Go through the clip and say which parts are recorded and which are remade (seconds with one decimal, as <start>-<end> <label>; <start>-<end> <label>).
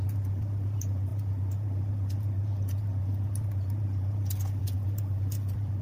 0.0-5.8 recorded